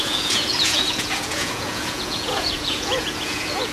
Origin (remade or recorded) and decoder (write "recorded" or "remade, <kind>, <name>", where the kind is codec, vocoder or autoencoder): remade, vocoder, Vocos